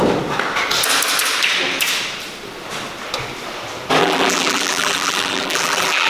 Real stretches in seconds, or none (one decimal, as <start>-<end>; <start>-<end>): 0.0-4.0